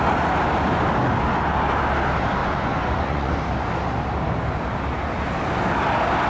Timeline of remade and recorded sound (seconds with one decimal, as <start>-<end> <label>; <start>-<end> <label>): 0.0-2.4 recorded; 2.4-3.3 remade; 3.3-6.3 recorded